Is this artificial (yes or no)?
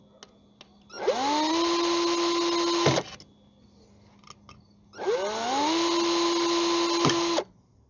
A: no